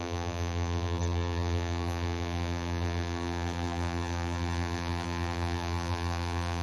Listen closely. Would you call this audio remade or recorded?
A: remade